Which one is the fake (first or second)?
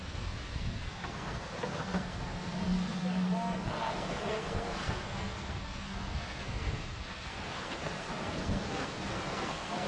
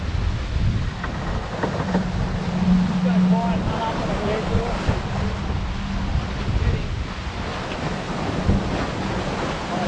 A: first